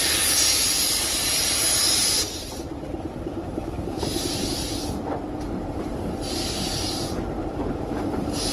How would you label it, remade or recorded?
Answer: remade